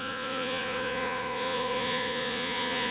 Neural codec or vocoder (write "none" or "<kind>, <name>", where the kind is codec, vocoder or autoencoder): vocoder, Vocos